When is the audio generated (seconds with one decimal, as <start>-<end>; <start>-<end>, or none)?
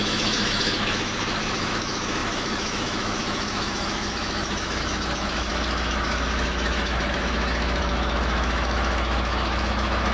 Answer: 0.0-10.1